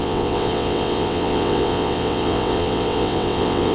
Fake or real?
fake